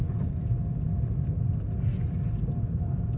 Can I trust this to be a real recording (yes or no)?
yes